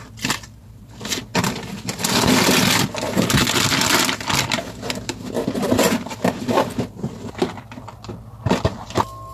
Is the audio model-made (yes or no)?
yes